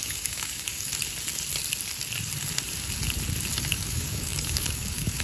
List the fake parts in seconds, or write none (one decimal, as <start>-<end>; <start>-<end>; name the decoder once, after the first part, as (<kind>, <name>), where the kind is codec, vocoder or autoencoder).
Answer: 0.0-0.9 (codec, DAC); 3.6-5.2